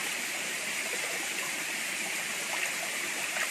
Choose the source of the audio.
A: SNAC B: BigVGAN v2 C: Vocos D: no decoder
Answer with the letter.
B